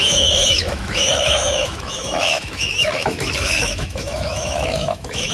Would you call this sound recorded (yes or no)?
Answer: no